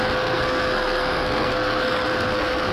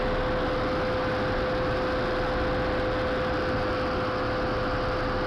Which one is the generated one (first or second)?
first